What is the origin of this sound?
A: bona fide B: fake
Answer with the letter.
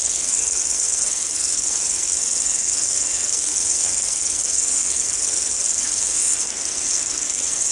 B